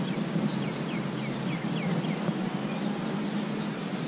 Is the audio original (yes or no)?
yes